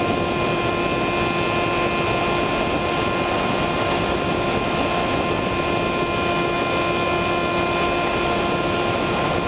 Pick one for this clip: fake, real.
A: real